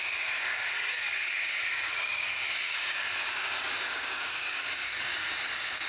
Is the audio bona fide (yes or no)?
no